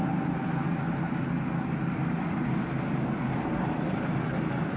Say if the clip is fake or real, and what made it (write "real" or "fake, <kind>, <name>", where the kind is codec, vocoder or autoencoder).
real